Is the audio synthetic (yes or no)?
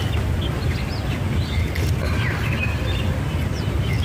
no